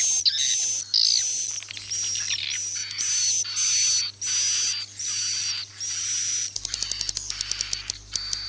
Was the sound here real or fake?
real